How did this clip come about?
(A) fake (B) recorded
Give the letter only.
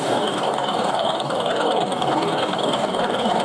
A